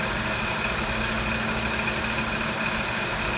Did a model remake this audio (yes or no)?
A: no